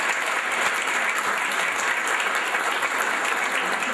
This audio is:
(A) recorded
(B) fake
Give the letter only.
A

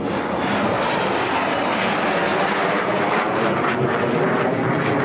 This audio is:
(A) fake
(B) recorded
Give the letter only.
B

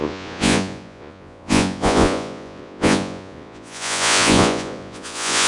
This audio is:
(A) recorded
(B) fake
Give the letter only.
B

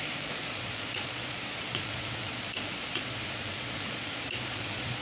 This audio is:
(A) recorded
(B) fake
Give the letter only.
B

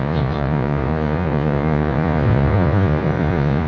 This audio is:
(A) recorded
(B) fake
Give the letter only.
B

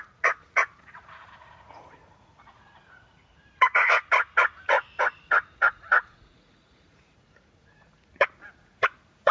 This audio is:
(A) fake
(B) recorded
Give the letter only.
A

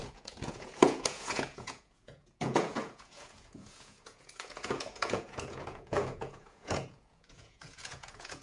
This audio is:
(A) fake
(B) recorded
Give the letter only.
A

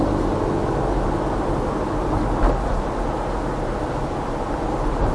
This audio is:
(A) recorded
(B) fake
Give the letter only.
A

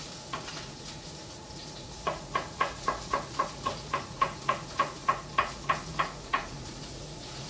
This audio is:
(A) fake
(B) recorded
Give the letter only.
A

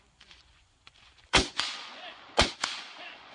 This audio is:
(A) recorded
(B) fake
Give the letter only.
B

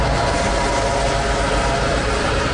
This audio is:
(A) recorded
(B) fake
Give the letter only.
A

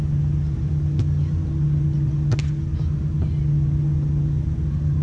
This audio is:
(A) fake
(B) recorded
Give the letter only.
B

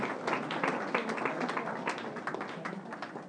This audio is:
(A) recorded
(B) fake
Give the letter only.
A